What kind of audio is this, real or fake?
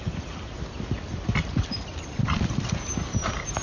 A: fake